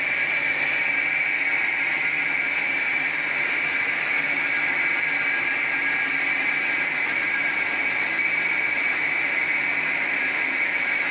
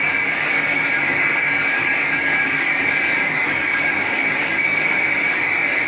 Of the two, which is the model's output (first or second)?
second